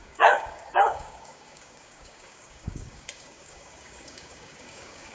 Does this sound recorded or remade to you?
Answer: remade